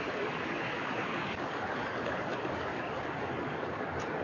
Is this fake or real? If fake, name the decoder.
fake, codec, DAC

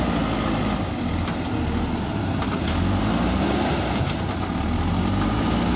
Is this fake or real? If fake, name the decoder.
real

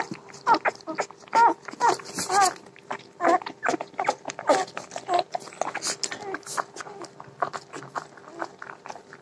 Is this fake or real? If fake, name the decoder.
real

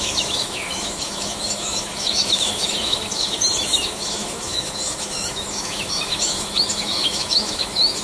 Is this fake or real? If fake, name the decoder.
fake, autoencoder, DAC-VAE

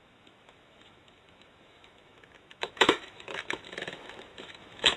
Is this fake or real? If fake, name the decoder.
fake, autoencoder, DAC-VAE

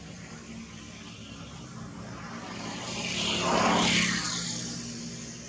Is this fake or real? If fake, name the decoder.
real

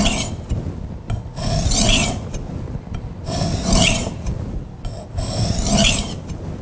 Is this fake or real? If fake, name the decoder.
real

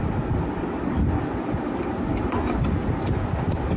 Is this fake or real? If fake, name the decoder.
real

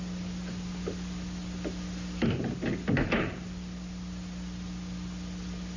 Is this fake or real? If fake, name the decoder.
real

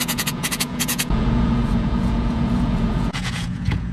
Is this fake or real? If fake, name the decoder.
fake, vocoder, Vocos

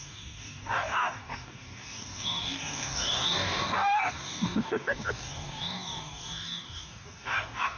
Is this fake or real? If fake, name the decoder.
fake, codec, DAC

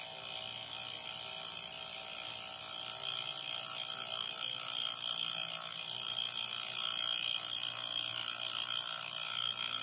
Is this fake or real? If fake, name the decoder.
real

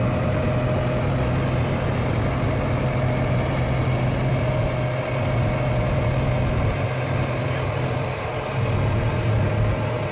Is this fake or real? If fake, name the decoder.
real